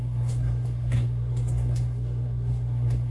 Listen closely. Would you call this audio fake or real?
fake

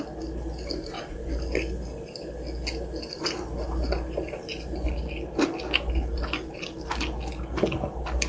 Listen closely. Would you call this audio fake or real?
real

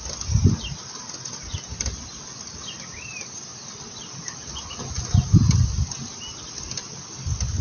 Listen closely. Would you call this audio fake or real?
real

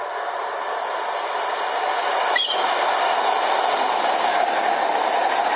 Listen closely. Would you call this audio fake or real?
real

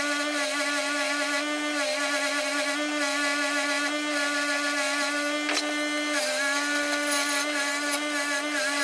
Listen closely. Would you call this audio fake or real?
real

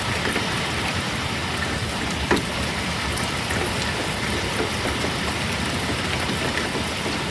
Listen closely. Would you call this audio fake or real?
fake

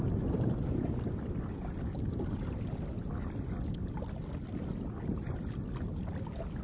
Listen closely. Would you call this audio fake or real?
real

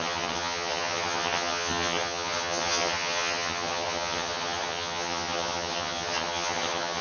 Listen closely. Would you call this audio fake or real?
fake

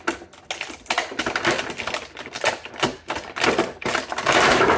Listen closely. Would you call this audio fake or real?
real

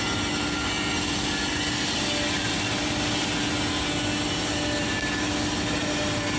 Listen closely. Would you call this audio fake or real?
real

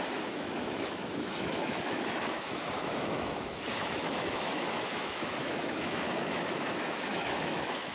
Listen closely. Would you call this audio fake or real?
fake